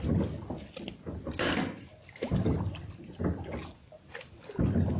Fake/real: real